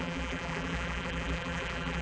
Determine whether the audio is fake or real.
fake